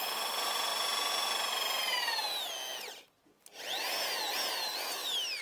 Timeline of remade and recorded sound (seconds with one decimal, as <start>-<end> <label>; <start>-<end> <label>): 0.0-5.4 recorded